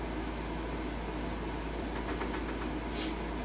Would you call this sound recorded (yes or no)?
yes